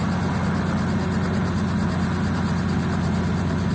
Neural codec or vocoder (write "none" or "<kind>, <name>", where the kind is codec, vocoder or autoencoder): none